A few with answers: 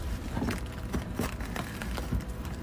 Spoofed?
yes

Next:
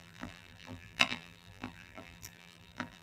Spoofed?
yes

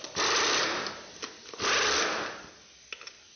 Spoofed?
no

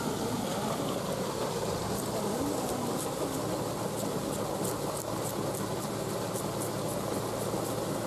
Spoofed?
no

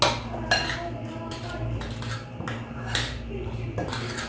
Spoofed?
no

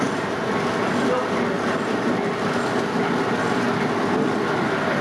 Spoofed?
no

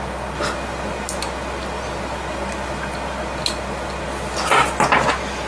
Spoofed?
no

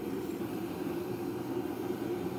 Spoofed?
yes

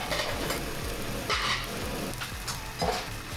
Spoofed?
no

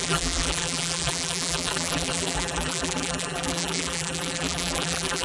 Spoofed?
yes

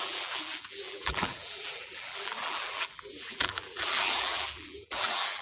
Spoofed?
yes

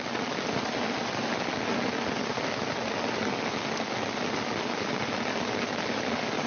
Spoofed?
no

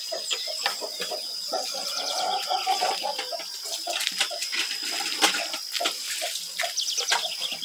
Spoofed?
no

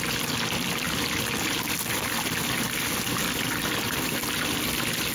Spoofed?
no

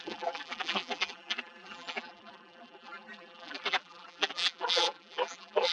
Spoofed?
yes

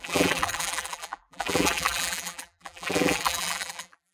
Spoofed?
yes